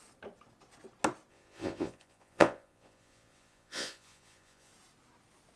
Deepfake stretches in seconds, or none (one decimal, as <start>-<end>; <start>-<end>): 1.3-4.7